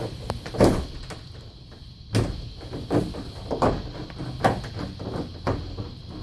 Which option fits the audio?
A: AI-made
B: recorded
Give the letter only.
B